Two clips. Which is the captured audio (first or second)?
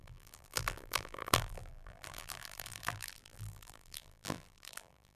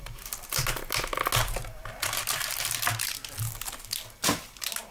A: second